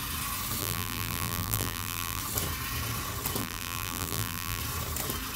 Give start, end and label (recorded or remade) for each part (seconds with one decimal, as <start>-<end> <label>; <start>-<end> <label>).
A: 0.0-0.6 recorded; 0.6-2.2 remade; 2.2-3.4 recorded; 3.4-4.6 remade; 4.6-5.4 recorded